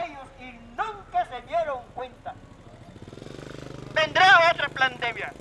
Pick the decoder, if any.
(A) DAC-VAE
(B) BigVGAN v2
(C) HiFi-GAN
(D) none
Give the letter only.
D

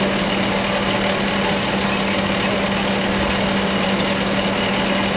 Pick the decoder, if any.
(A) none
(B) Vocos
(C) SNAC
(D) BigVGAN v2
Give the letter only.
A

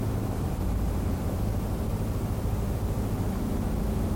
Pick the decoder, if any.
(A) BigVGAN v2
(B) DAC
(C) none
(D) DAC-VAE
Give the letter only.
C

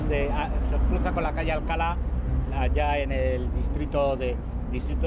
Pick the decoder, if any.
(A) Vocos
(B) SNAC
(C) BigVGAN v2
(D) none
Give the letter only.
D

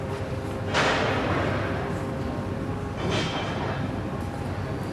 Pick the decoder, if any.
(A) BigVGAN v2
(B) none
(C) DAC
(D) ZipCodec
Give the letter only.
B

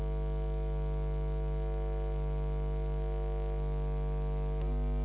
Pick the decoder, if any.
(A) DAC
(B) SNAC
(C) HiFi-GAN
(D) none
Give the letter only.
D